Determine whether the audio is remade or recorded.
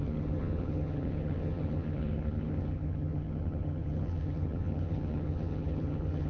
remade